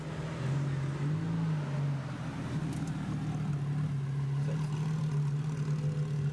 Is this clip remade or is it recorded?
recorded